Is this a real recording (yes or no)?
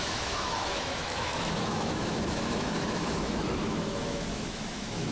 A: no